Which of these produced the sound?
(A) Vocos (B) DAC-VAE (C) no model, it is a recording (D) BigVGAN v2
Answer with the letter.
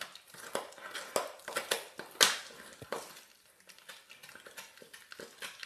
C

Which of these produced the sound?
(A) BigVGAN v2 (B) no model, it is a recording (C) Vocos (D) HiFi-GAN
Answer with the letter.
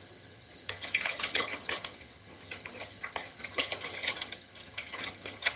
D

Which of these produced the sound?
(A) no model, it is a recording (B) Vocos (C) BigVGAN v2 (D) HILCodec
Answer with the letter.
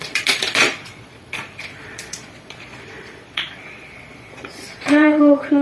B